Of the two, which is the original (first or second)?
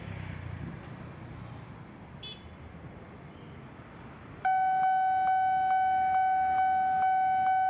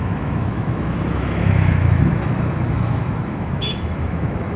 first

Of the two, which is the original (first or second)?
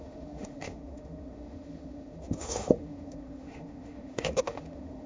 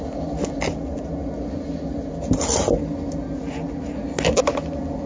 second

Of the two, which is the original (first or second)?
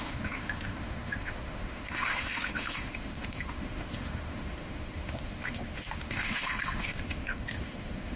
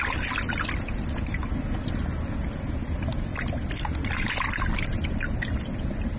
second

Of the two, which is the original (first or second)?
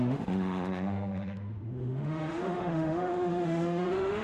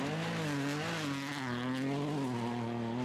second